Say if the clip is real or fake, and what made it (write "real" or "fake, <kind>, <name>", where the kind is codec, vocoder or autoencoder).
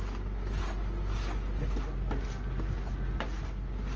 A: real